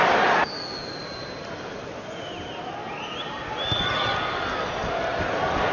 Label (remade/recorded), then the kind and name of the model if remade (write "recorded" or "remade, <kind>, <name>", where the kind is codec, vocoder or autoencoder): recorded